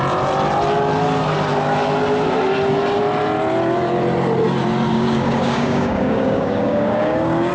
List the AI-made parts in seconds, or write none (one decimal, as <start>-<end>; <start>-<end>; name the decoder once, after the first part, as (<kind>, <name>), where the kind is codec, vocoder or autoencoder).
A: 4.9-7.5 (codec, DAC)